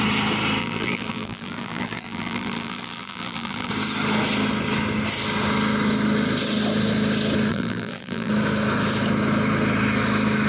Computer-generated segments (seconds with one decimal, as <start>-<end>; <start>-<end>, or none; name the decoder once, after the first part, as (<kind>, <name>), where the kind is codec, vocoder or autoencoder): 0.6-3.7 (vocoder, BigVGAN v2); 7.5-8.3